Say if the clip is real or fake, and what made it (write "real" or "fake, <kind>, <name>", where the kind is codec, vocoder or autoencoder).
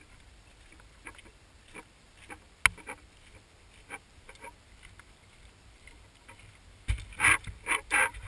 real